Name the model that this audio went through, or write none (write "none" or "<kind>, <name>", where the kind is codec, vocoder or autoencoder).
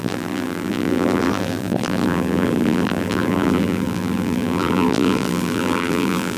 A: vocoder, BigVGAN v2